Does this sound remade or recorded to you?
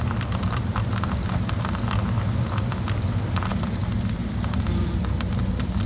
recorded